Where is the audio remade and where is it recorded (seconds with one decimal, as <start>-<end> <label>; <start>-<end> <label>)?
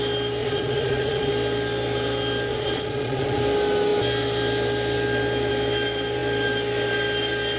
0.0-0.4 recorded; 0.4-1.3 remade; 1.3-2.5 recorded; 2.5-3.4 remade; 3.4-7.6 recorded